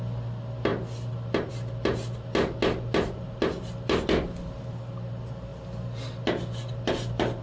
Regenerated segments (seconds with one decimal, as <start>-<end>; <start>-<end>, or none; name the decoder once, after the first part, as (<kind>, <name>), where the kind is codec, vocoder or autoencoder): none